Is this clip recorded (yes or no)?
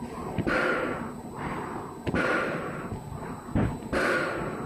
yes